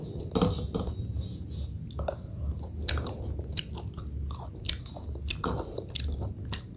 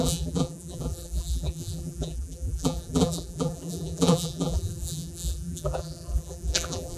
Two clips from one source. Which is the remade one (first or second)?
second